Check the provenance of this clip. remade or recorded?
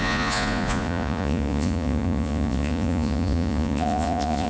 remade